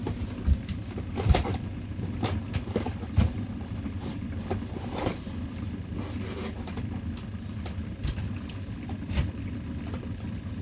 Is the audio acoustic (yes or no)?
yes